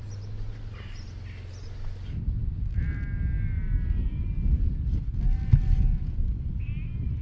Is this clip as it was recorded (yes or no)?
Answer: yes